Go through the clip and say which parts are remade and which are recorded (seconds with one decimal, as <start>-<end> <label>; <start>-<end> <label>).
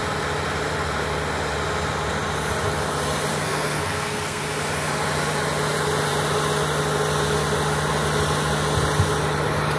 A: 0.0-3.3 recorded; 3.3-4.4 remade; 4.4-9.8 recorded